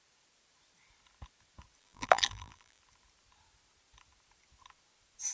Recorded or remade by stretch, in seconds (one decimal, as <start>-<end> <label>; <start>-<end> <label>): 0.0-1.8 recorded; 1.8-2.8 remade; 2.8-5.3 recorded